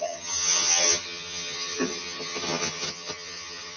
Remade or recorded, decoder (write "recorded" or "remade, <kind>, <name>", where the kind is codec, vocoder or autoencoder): remade, vocoder, HiFi-GAN